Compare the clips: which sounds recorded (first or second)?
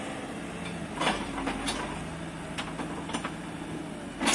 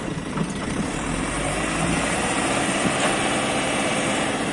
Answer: first